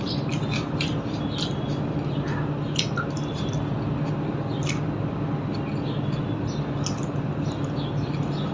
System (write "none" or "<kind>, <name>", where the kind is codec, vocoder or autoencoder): none